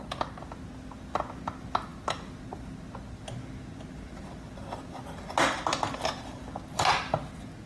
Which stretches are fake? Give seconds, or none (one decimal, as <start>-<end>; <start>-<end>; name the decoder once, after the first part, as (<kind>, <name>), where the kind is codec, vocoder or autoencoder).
none

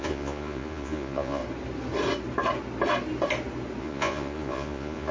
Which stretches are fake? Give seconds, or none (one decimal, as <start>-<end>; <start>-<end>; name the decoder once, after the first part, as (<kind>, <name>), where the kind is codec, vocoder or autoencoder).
0.0-1.4 (vocoder, Vocos); 3.8-5.1

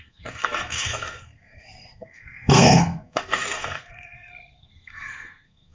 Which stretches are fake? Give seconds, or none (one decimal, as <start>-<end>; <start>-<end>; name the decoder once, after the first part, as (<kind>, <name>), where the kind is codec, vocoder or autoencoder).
0.0-5.7 (codec, SNAC)

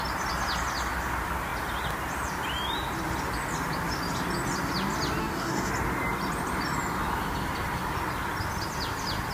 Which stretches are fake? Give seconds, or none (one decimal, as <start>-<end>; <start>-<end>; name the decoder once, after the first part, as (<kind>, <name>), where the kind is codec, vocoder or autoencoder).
5.2-5.7 (codec, DAC)

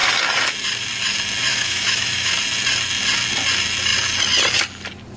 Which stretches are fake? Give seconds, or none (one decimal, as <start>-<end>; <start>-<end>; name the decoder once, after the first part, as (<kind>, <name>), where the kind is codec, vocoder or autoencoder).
1.5-2.3 (autoencoder, DAC-VAE)

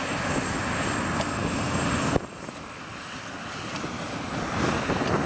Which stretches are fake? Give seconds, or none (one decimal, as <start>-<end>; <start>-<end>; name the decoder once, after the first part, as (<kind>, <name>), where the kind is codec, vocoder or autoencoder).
none